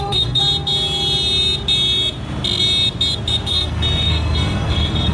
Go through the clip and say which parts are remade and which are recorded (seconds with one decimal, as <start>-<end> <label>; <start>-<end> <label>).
0.0-0.4 remade; 0.4-3.5 recorded; 3.5-5.1 remade